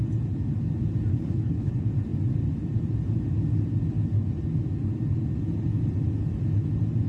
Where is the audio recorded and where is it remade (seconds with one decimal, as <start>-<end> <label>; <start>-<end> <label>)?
0.0-1.1 recorded; 1.1-1.7 remade; 1.7-7.1 recorded